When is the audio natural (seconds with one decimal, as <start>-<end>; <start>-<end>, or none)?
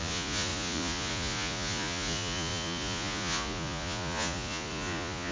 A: none